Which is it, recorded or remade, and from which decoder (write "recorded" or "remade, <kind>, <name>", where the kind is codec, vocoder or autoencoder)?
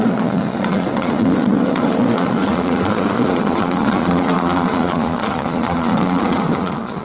remade, vocoder, Vocos